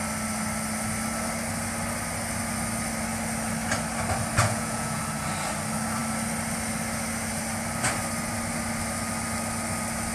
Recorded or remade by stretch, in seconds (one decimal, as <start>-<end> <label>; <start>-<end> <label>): 0.0-4.4 recorded; 4.4-5.0 remade; 5.0-10.1 recorded